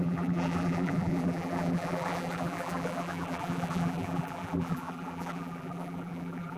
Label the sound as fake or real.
fake